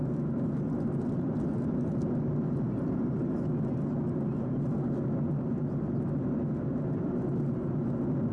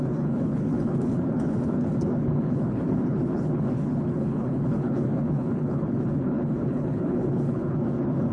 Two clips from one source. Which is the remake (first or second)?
second